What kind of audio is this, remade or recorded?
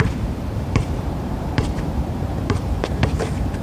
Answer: remade